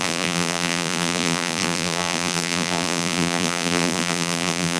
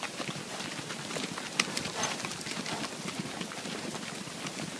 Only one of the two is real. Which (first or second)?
second